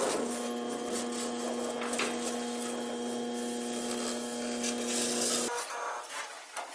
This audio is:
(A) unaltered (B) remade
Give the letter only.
A